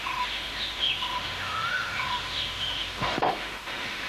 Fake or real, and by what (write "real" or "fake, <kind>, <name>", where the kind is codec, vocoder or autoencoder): fake, autoencoder, DAC-VAE